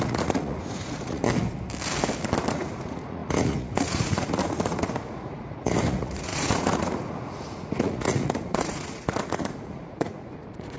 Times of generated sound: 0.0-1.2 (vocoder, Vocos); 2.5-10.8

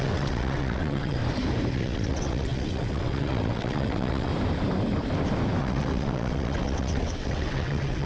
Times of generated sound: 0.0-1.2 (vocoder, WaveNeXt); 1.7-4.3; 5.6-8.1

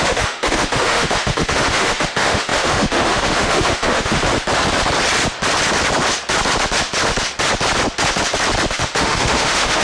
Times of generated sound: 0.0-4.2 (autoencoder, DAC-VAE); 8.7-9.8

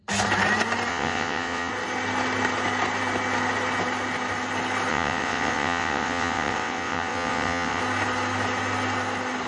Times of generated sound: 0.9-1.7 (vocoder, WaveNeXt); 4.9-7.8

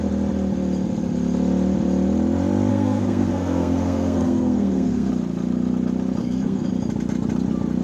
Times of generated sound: 2.7-5.1 (codec, SNAC); 6.2-6.7

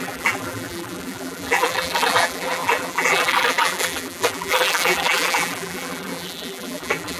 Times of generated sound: 0.0-7.2 (vocoder, BigVGAN v2)

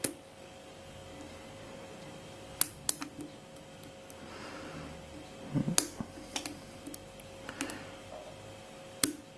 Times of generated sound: none

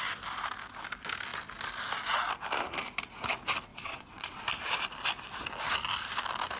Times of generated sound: 3.7-4.4 (vocoder, WaveNeXt)